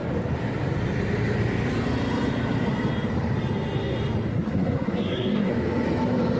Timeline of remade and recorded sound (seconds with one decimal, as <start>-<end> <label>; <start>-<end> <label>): 0.0-4.3 recorded; 4.3-5.5 remade; 5.5-6.4 recorded